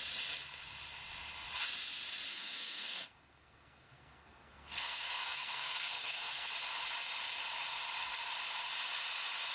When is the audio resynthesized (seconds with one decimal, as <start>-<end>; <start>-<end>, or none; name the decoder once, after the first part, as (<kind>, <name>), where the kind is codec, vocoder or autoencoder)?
2.3-6.5 (codec, SNAC)